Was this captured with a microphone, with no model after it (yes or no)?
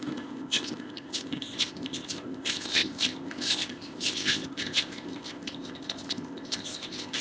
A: no